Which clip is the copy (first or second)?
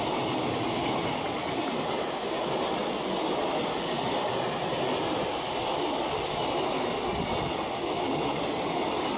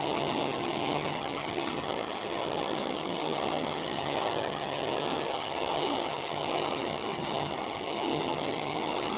second